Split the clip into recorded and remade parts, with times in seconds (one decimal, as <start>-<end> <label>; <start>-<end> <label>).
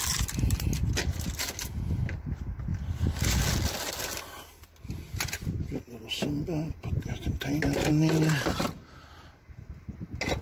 0.0-10.4 recorded